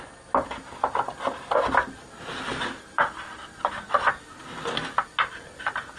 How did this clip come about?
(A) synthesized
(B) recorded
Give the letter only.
B